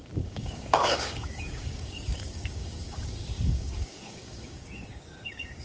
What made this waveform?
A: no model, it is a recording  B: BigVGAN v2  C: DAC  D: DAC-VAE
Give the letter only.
C